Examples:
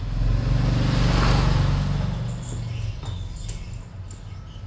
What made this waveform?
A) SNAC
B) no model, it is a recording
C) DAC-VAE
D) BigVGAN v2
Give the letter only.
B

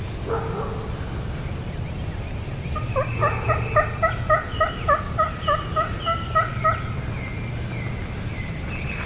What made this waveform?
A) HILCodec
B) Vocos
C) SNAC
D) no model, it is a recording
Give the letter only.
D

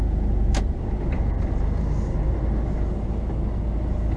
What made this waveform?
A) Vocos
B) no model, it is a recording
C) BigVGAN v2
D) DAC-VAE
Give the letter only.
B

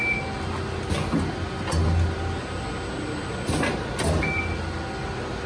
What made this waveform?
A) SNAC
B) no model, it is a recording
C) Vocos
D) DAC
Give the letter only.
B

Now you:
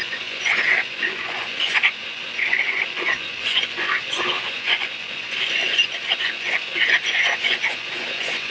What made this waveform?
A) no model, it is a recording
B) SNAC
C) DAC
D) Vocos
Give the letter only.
D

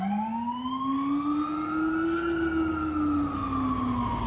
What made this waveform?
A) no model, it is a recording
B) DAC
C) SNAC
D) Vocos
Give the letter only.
A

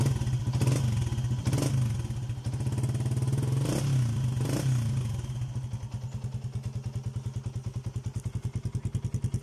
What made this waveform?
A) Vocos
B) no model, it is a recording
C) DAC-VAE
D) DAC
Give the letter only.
B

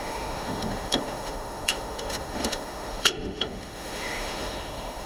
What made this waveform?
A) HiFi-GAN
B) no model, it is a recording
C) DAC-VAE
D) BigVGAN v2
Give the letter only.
C